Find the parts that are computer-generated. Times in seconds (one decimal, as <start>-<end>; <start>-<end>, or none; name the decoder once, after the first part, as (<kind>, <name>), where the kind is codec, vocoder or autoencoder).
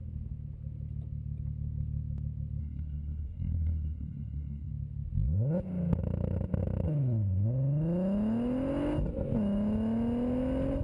2.6-4.7 (codec, SNAC)